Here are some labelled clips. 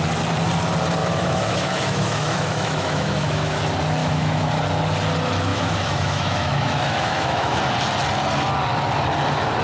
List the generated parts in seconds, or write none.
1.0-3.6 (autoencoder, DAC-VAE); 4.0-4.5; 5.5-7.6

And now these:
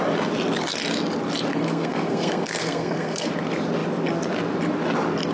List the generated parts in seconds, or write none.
1.5-3.3 (codec, SNAC)

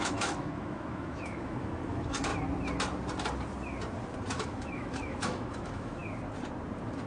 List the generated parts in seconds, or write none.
0.0-2.3 (autoencoder, DAC-VAE); 4.3-6.0

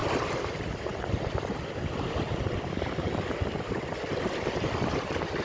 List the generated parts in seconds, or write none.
none

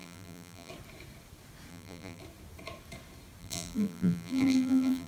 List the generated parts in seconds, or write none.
0.0-0.7 (vocoder, BigVGAN v2); 1.7-2.2; 3.4-5.1

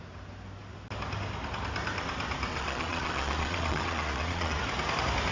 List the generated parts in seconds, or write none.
2.5-4.6 (vocoder, Vocos)